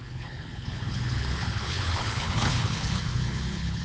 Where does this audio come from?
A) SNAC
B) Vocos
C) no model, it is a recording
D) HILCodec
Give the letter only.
D